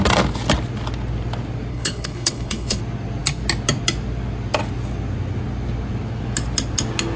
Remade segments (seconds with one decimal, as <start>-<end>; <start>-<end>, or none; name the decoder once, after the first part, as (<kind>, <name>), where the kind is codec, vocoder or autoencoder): 1.7-2.8 (codec, HILCodec)